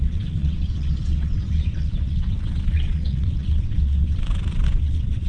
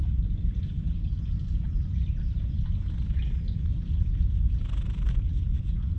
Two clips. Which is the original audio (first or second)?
second